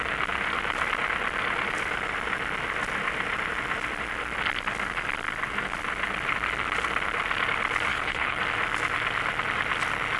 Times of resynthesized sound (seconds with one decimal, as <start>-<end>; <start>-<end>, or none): 7.9-8.4